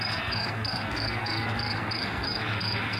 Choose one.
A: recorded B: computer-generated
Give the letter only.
B